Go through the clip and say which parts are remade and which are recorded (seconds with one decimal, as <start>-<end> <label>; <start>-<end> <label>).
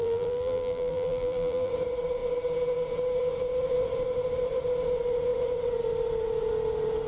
0.0-1.7 remade; 1.7-7.1 recorded